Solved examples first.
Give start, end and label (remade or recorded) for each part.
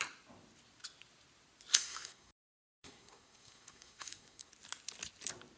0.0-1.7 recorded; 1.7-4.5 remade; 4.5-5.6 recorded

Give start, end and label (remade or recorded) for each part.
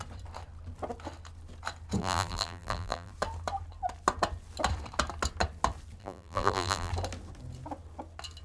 0.0-2.0 recorded; 2.0-3.1 remade; 3.1-6.0 recorded; 6.0-6.9 remade; 6.9-8.4 recorded